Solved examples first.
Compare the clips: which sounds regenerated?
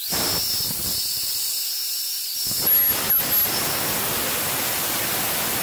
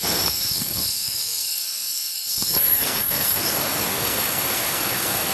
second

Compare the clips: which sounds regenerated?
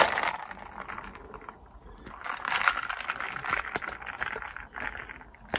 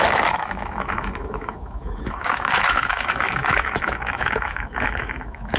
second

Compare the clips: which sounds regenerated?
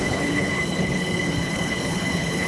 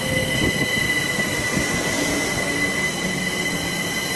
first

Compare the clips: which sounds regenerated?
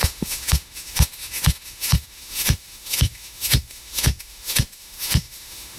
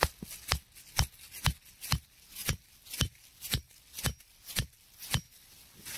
first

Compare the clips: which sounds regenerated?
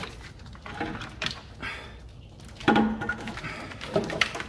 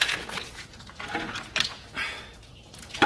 second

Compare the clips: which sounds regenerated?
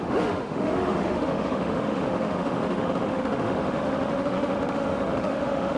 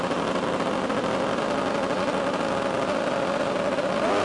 first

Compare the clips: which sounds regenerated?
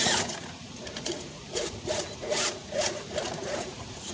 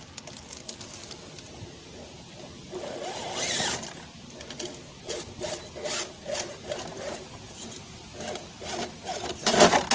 first